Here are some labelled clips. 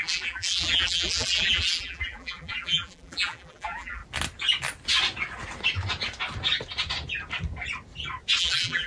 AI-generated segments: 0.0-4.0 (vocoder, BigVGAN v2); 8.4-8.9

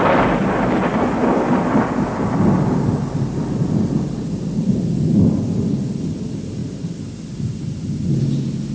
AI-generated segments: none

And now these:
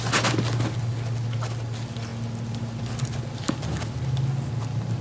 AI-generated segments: none

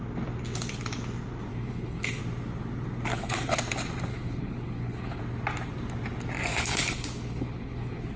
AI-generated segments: 1.5-2.2 (codec, HILCodec); 3.1-3.6; 4.1-5.2; 6.5-8.2